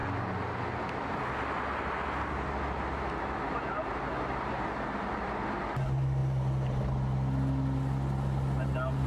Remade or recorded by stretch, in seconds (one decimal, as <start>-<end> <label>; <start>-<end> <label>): 0.0-9.1 recorded